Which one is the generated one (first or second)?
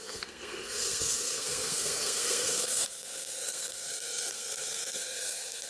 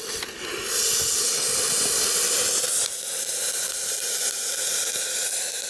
first